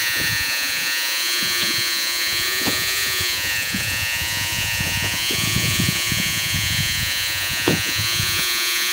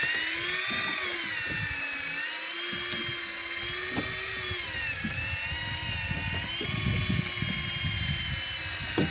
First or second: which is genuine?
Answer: second